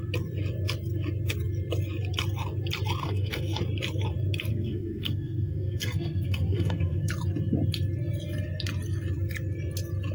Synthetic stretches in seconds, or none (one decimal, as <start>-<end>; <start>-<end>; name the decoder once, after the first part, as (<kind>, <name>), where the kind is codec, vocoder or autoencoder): 3.0-3.6 (codec, SNAC); 4.5-7.1